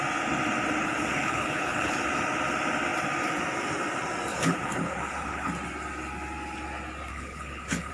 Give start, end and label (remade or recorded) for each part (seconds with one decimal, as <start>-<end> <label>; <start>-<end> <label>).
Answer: 0.0-0.8 recorded; 0.8-2.0 remade; 2.0-4.3 recorded; 4.3-5.5 remade; 5.5-7.1 recorded; 7.1-7.9 remade